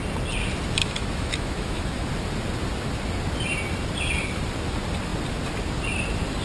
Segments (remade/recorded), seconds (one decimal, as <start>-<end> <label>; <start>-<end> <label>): 0.0-0.8 recorded; 0.8-2.1 remade; 2.1-6.4 recorded